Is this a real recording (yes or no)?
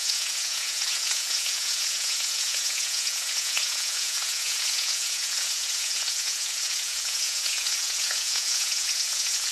no